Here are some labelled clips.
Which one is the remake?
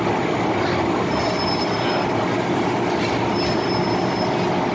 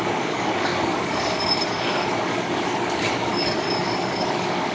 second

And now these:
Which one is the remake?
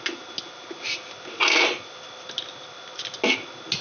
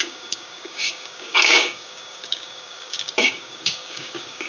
second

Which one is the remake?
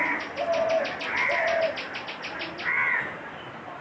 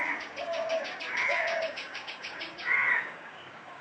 second